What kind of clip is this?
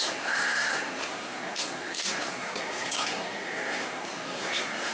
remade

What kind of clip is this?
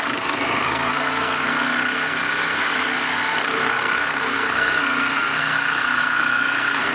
remade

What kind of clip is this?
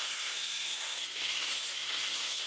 remade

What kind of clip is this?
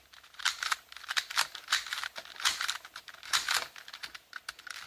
recorded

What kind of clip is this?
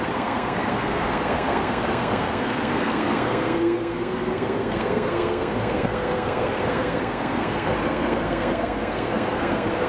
remade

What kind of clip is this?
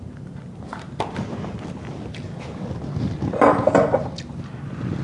recorded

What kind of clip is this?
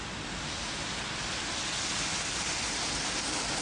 recorded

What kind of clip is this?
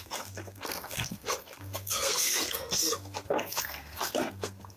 remade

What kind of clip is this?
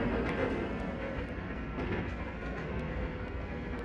remade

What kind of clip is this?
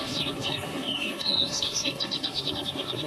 remade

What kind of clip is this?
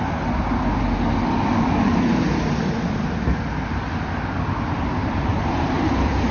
recorded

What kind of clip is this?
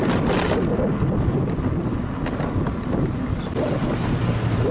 recorded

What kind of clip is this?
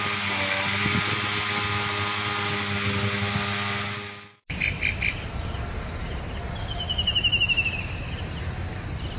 recorded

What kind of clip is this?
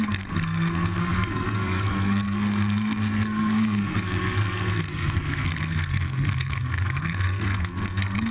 remade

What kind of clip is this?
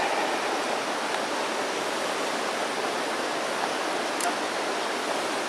recorded